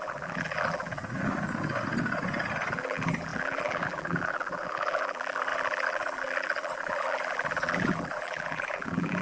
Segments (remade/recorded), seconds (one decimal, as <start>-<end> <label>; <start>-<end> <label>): 0.0-1.0 remade; 1.0-2.7 recorded; 2.7-9.2 remade